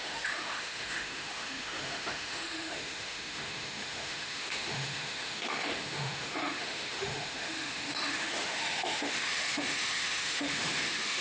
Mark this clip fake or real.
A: fake